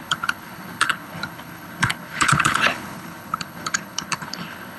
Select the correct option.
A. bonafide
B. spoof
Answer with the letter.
B